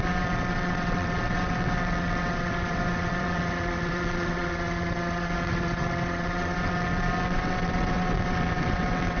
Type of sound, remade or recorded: remade